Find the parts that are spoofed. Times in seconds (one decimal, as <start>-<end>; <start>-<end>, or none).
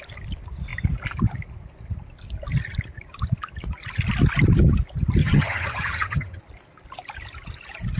5.2-6.4